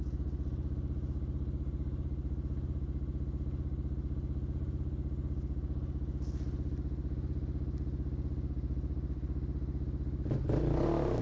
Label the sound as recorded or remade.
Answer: recorded